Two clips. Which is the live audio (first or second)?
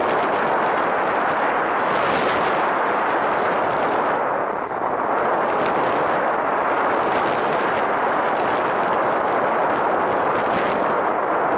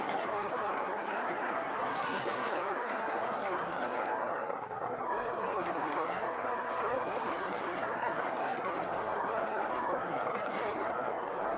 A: first